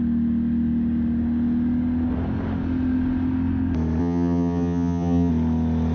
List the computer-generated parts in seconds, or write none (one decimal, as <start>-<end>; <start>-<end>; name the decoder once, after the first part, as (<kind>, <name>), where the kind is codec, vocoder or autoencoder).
4.0-5.3 (vocoder, HiFi-GAN)